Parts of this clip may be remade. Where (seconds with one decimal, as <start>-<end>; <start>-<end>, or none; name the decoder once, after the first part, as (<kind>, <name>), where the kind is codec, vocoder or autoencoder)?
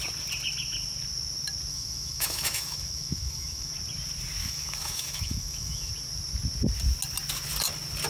1.7-3.7 (autoencoder, DAC-VAE); 4.4-5.9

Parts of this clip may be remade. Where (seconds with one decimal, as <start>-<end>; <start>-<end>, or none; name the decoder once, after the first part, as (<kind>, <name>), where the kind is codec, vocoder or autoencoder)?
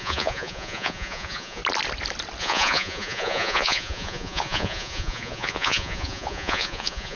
0.0-1.6 (vocoder, Vocos); 2.4-7.2